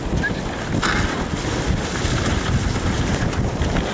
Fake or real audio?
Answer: real